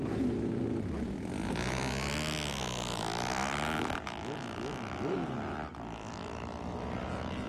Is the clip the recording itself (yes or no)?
yes